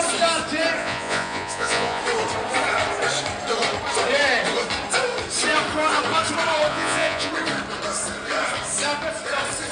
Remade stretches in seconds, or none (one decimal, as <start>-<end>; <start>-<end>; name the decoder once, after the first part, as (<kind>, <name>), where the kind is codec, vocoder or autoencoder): 0.8-2.0 (vocoder, Vocos); 6.7-7.3